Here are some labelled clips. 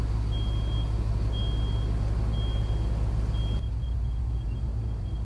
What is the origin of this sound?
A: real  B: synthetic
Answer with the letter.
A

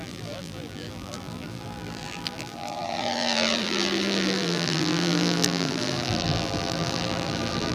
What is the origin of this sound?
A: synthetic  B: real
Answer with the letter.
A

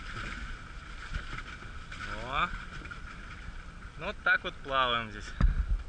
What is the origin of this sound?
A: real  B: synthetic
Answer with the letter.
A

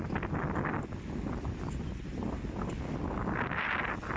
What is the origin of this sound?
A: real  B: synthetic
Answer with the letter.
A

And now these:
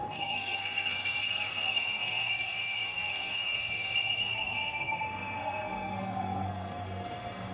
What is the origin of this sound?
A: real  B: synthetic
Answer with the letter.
B